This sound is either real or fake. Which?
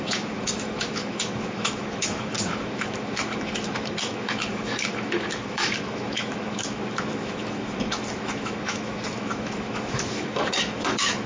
fake